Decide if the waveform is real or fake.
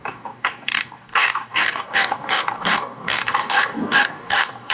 fake